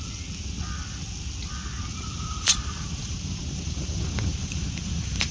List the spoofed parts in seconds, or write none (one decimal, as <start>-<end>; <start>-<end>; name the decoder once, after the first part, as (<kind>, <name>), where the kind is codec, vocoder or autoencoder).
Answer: 1.9-5.3 (vocoder, BigVGAN v2)